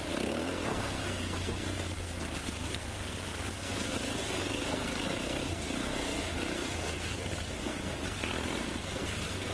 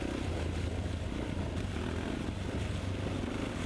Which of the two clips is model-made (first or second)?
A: first